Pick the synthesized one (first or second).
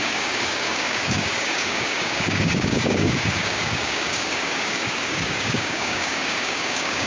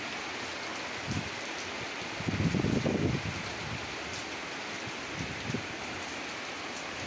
first